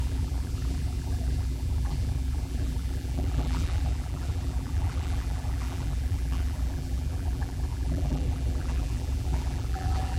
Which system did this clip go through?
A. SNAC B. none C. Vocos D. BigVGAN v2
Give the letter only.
D